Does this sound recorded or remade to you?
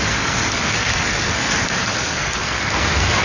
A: remade